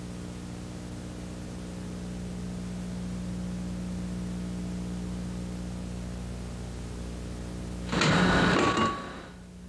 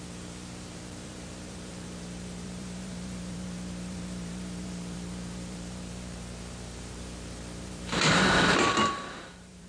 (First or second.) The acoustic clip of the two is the first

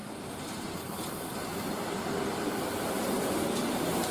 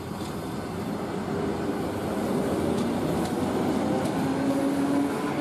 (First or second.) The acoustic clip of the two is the second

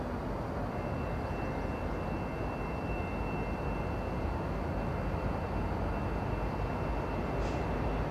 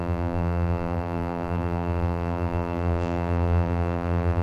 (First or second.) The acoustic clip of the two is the first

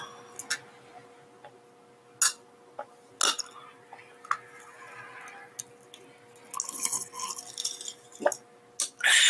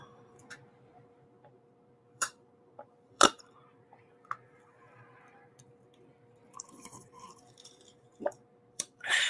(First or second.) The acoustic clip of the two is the first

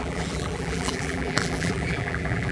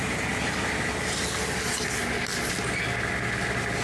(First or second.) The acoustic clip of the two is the second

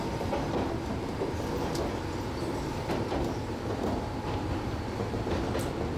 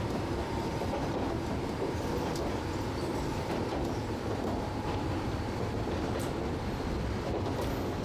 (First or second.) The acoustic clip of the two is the first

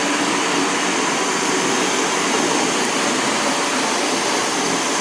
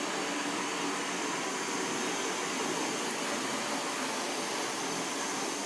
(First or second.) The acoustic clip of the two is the second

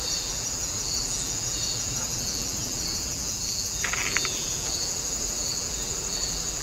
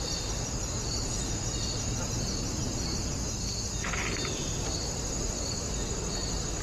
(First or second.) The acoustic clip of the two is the second